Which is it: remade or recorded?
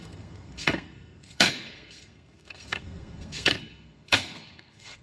remade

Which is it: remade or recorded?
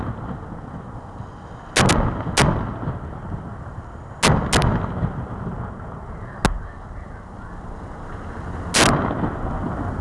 recorded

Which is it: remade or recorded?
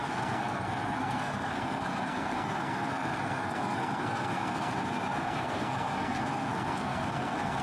remade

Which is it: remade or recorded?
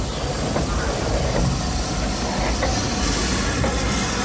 recorded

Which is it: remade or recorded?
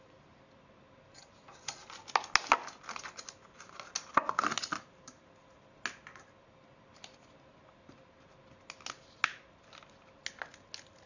recorded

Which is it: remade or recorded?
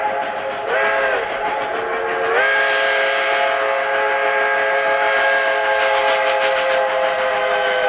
recorded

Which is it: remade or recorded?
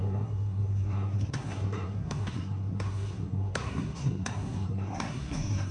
remade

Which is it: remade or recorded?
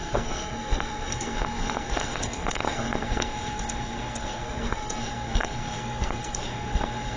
remade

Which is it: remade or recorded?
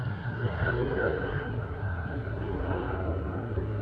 remade